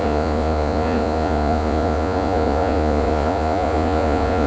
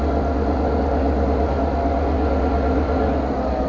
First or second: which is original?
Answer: second